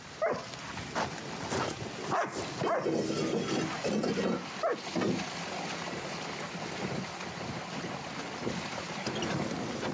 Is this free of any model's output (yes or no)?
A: yes